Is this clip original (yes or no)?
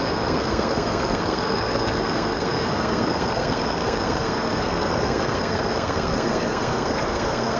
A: no